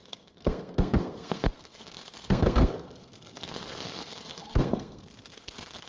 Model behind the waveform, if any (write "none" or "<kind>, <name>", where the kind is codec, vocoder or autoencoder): codec, SNAC